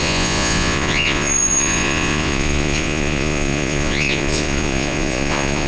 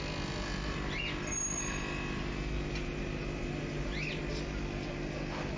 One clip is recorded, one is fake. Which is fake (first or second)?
first